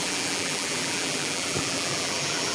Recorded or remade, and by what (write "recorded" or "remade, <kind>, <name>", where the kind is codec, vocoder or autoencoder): remade, vocoder, BigVGAN v2